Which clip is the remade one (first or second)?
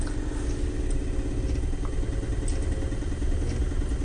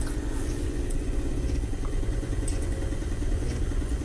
second